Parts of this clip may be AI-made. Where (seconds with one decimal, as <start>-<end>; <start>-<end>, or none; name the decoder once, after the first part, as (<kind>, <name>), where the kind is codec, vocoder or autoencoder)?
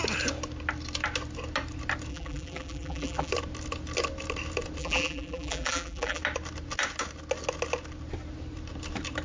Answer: 2.1-3.3 (vocoder, BigVGAN v2); 4.8-6.2